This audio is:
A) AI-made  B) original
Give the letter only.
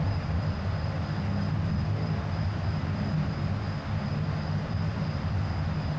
B